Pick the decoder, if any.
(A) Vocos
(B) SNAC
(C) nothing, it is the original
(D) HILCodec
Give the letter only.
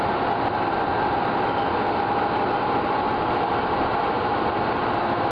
C